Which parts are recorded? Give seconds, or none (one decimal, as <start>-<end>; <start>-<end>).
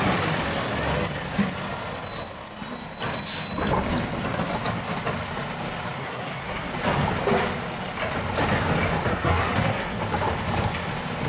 0.0-6.0; 6.7-9.1; 10.0-11.3